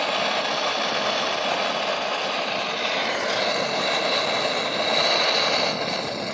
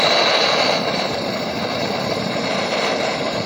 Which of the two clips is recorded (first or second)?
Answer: first